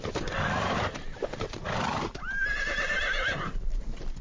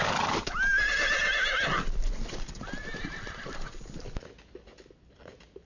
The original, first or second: second